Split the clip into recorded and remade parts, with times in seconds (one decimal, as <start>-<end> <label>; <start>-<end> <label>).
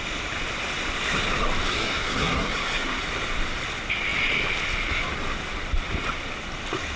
0.0-1.7 recorded; 1.7-3.0 remade; 3.0-7.0 recorded